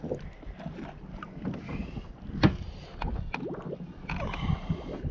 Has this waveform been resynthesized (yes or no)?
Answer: no